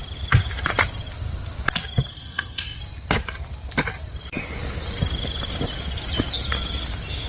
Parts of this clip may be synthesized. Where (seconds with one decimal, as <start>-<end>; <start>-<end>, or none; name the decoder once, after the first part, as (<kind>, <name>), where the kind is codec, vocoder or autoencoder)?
2.1-2.8 (codec, SNAC)